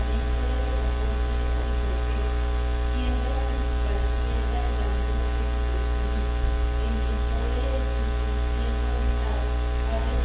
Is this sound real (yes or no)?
yes